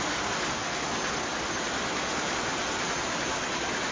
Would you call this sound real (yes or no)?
yes